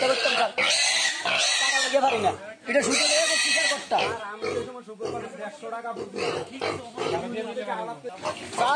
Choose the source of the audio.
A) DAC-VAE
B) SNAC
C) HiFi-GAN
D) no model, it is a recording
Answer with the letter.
D